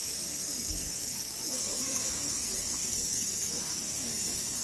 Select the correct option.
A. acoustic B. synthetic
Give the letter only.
B